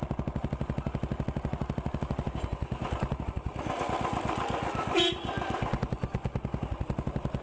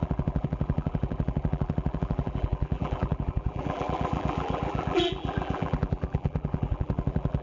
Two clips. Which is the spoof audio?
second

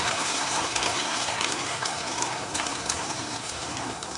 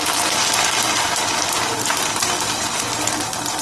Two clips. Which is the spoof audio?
first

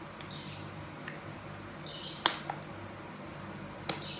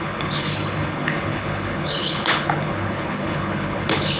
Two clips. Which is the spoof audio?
second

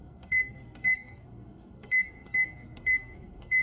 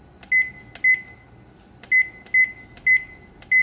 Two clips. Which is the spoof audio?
first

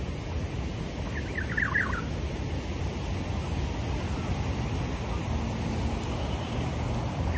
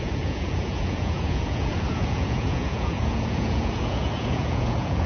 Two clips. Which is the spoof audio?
second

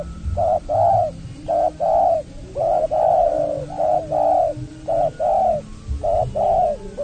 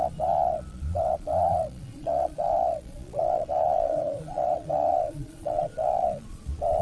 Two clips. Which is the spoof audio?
second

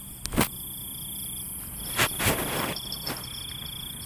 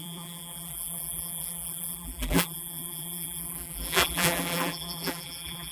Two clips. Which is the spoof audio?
second